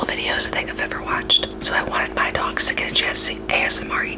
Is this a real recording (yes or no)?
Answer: yes